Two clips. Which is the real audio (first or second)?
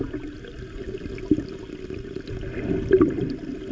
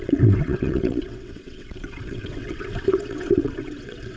first